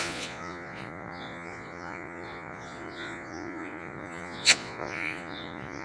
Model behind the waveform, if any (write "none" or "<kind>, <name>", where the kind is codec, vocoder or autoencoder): vocoder, Vocos